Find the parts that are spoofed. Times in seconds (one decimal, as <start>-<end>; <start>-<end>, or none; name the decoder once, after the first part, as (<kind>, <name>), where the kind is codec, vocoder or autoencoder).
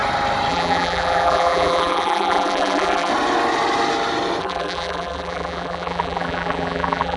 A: 0.5-3.1 (vocoder, BigVGAN v2); 4.4-7.2